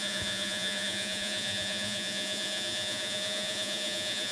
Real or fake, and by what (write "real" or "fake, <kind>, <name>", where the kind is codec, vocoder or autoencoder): fake, vocoder, Vocos